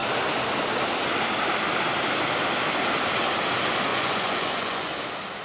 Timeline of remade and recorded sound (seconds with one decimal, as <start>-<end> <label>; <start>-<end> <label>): 0.0-3.9 recorded; 3.9-4.9 remade; 4.9-5.4 recorded